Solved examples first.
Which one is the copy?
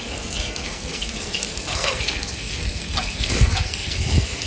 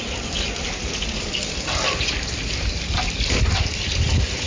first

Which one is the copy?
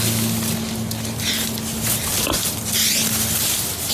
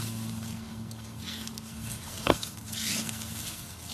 second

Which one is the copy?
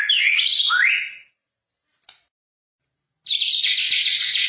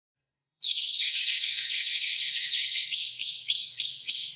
second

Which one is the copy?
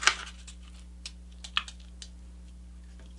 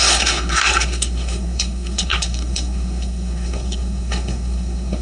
second